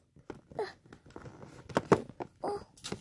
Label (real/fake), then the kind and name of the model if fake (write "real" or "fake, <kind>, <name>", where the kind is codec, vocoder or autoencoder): real